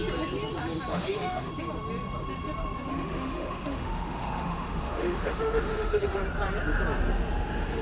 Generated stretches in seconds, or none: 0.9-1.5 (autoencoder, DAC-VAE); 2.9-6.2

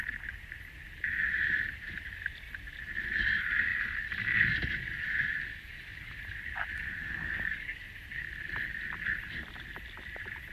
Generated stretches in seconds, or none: 7.0-7.8 (codec, DAC)

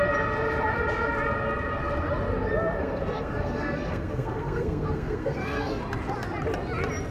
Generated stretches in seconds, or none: 2.8-5.8 (codec, SNAC)